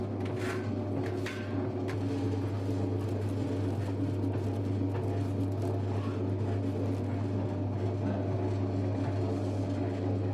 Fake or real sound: real